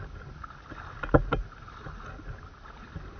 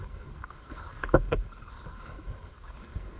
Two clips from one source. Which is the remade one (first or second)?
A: second